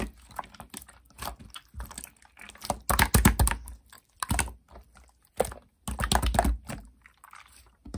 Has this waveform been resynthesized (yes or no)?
no